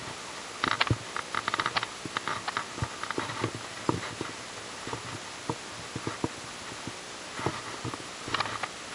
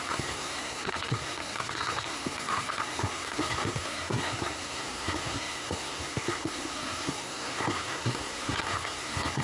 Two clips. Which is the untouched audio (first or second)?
first